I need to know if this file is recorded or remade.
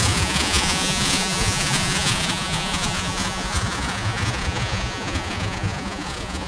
remade